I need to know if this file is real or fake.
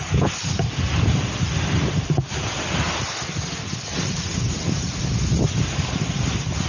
real